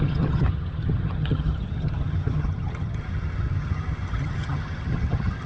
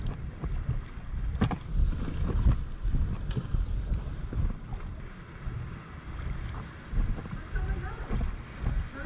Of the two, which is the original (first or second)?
second